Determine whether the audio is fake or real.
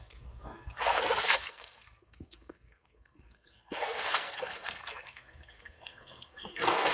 fake